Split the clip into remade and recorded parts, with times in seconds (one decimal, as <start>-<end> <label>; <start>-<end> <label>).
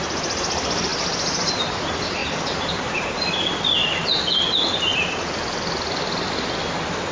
0.0-3.8 remade; 3.8-7.1 recorded